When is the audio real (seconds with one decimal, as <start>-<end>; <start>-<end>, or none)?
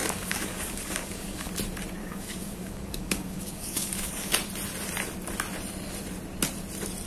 1.5-2.0; 4.3-7.1